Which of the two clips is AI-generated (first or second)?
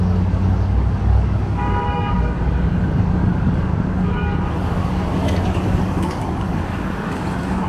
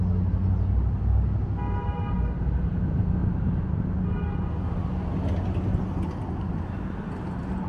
first